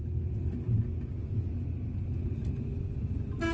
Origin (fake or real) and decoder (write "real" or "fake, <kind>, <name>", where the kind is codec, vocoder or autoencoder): real